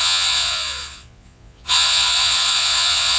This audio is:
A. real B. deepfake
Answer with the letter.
B